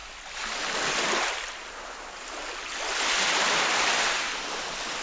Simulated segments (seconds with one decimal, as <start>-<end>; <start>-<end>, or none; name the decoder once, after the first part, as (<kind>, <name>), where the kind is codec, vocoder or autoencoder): none